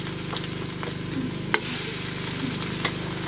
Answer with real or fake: real